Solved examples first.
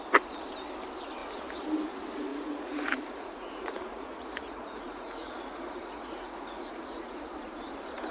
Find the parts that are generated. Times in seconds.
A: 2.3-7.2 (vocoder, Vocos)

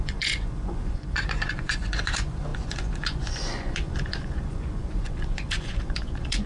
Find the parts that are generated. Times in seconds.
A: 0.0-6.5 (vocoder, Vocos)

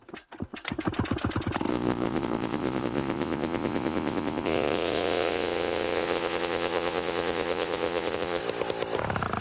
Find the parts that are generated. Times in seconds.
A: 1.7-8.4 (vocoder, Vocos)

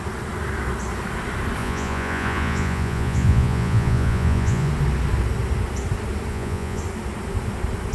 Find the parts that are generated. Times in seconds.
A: 1.6-4.7 (vocoder, Vocos); 6.3-6.8

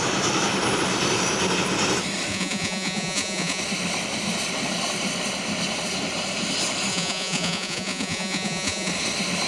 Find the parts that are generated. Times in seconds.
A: 2.3-3.6 (vocoder, Vocos); 6.9-8.9